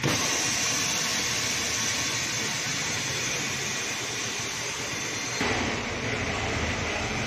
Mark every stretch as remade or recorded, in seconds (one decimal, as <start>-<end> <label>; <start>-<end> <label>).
0.0-2.7 recorded; 2.7-5.5 remade; 5.5-7.3 recorded